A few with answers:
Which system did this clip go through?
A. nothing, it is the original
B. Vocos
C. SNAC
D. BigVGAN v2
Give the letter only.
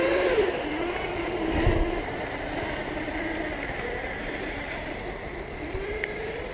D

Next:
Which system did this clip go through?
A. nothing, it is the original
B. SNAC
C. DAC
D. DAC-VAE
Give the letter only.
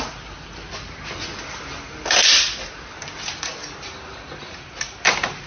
A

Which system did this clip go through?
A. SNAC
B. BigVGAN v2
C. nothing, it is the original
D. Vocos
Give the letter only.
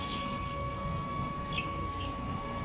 A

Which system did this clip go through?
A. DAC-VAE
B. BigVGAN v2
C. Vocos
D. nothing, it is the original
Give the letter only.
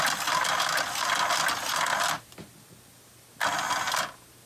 D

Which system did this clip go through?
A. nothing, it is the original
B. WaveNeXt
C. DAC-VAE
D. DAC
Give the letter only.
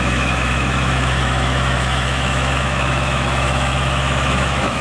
C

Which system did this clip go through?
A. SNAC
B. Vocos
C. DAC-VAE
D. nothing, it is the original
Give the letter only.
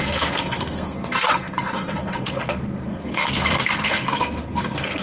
A